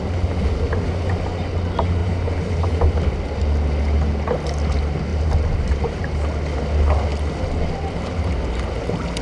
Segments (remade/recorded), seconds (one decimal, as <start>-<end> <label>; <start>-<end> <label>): 0.0-2.0 recorded; 2.0-2.7 remade; 2.7-5.1 recorded; 5.1-6.0 remade; 6.0-9.2 recorded